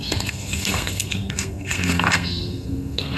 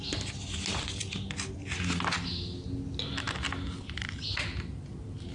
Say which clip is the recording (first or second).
second